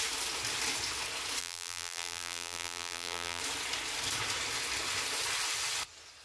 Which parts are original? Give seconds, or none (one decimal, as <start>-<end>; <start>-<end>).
0.0-1.4; 3.4-6.2